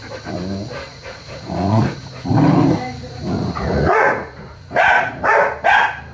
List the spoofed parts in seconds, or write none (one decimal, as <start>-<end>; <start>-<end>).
0.9-2.3; 3.0-5.2